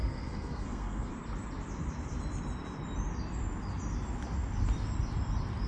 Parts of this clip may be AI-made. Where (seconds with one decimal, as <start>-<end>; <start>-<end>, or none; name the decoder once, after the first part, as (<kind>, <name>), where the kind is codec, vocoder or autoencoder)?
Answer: 0.0-1.1 (codec, SNAC)